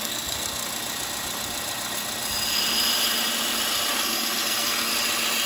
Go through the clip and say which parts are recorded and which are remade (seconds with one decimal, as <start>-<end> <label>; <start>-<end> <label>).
0.0-0.6 remade; 0.6-3.9 recorded; 3.9-4.9 remade; 4.9-5.5 recorded